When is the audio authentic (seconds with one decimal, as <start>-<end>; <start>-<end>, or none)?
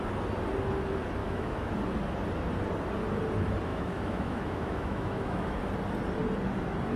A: 0.0-1.2; 1.7-3.7; 5.6-7.0